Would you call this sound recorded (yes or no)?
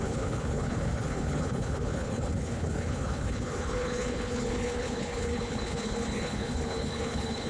no